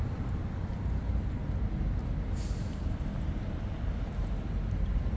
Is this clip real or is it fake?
real